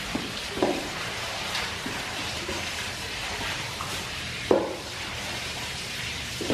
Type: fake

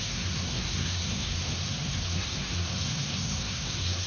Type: fake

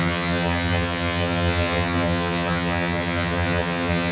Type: fake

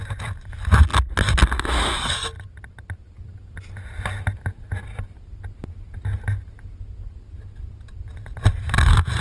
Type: real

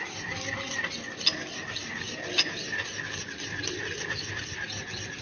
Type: real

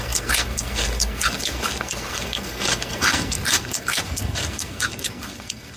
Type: fake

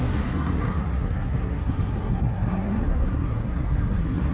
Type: fake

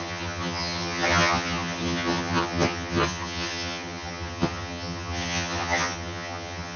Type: fake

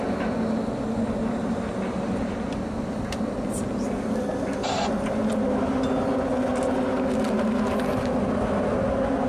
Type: real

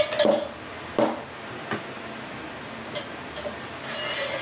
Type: real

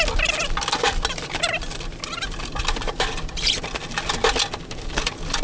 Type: real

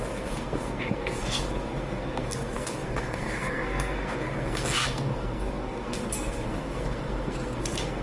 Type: fake